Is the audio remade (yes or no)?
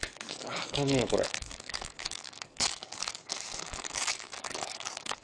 yes